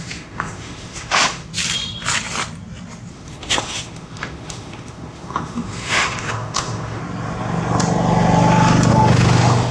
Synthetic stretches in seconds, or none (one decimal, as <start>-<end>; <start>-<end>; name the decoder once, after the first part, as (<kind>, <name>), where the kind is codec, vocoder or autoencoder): 0.0-1.5 (autoencoder, DAC-VAE); 3.1-7.0; 8.9-9.7